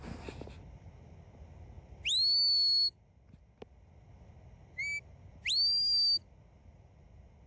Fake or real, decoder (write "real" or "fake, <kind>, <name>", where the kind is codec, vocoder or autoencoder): real